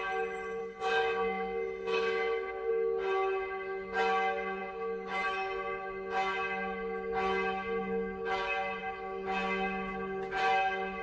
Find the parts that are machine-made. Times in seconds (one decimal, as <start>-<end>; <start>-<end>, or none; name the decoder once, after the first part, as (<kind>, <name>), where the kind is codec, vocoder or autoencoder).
0.6-2.7 (codec, SNAC)